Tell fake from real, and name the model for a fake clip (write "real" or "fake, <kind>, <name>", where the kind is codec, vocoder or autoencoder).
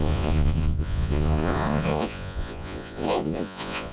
fake, vocoder, Vocos